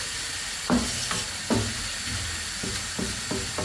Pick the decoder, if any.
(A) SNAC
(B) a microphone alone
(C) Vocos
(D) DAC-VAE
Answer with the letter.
B